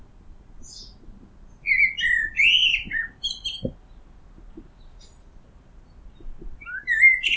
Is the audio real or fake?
real